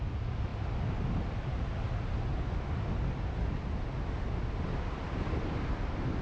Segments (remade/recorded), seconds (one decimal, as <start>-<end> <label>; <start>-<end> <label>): 0.0-6.2 recorded